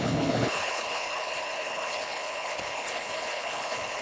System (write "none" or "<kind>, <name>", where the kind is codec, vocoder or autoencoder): codec, HILCodec